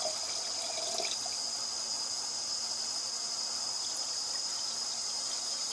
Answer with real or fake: real